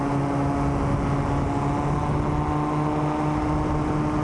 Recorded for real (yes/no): yes